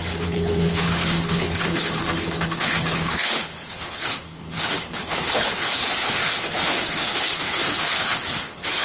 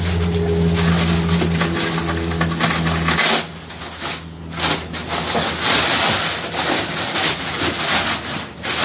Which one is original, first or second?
second